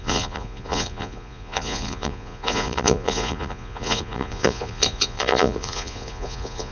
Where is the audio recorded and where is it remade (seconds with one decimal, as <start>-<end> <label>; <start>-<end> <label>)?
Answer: 0.0-6.7 remade